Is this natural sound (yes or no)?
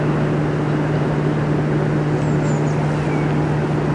yes